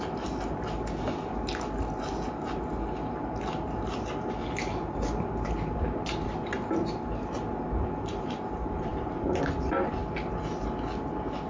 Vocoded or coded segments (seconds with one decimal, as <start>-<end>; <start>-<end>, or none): none